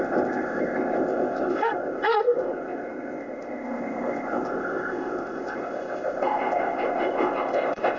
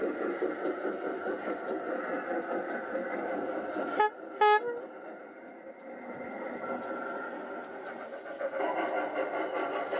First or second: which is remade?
first